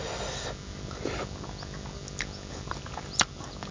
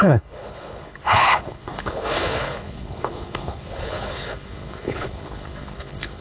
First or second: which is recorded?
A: first